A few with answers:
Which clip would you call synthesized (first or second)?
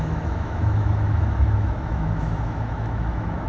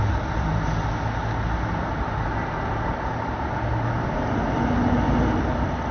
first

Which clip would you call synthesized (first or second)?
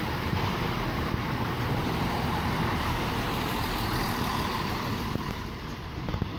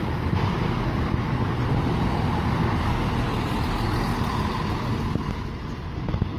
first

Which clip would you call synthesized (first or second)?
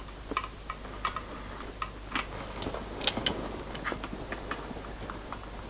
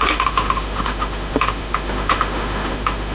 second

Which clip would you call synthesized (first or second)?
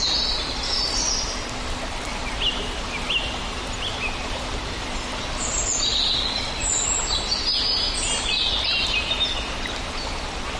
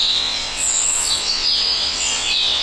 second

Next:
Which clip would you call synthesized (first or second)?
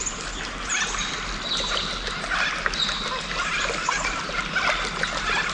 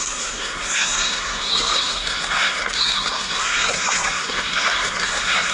second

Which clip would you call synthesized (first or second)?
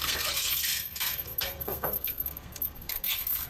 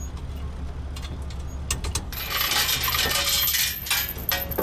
first